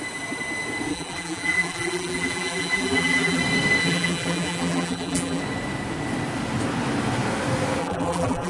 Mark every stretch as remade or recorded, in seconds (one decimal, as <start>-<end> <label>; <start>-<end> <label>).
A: 0.0-0.9 recorded; 0.9-3.4 remade; 3.4-3.8 recorded; 3.8-5.4 remade; 5.4-7.8 recorded; 7.8-8.5 remade